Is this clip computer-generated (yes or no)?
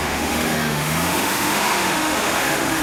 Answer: yes